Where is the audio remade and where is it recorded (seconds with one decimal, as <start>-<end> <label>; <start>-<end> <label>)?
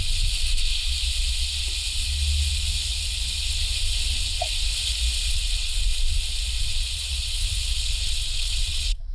0.0-0.7 remade; 0.7-5.3 recorded; 5.3-5.9 remade; 5.9-6.6 recorded; 6.6-9.1 remade